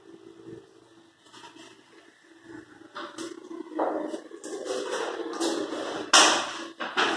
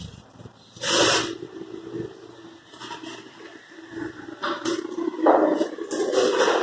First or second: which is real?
first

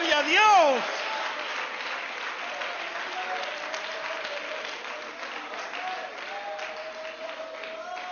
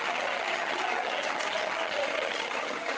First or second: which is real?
first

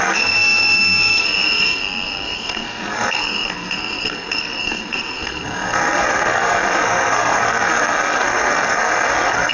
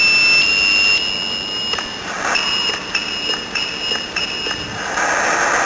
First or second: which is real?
second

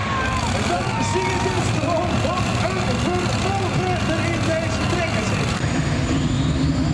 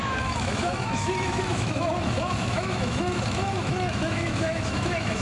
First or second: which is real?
first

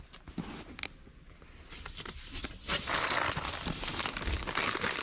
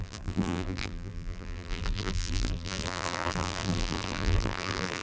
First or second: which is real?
first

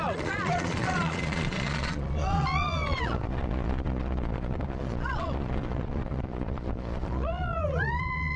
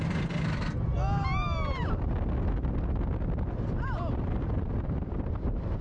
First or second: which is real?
second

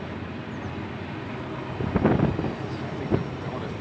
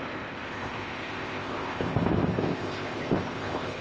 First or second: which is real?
first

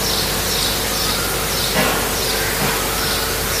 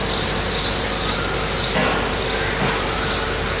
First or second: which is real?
first